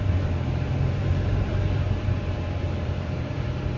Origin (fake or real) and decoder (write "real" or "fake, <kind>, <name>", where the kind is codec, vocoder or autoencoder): fake, vocoder, BigVGAN v2